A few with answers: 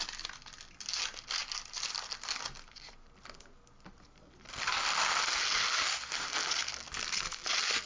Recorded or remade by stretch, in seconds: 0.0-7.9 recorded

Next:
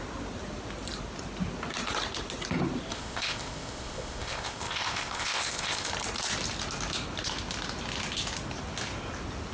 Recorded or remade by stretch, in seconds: 0.0-2.9 recorded; 2.9-5.9 remade; 5.9-9.5 recorded

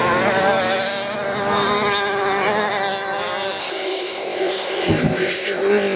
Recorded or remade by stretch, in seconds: 0.0-3.6 recorded; 3.6-6.0 remade

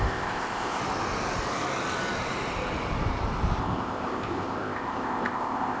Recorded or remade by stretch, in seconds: 0.0-0.8 remade; 0.8-3.6 recorded; 3.6-5.8 remade

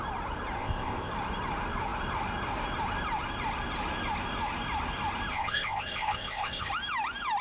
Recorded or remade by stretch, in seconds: 0.0-0.6 recorded; 0.6-1.1 remade; 1.1-5.3 recorded; 5.3-6.7 remade; 6.7-7.4 recorded

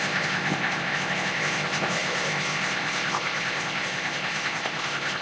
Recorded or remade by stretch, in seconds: 0.0-5.2 remade

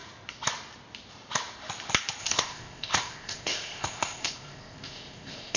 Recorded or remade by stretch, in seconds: 0.0-2.2 recorded; 2.2-5.6 remade

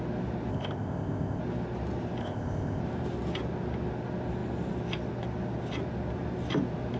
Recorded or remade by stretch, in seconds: 0.0-0.5 recorded; 0.5-1.4 remade; 1.4-2.2 recorded; 2.2-2.8 remade; 2.8-7.0 recorded